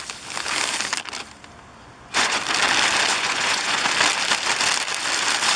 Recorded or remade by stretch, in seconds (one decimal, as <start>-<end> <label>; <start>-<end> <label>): 0.0-1.7 recorded; 1.7-2.4 remade; 2.4-3.1 recorded; 3.1-3.9 remade; 3.9-5.6 recorded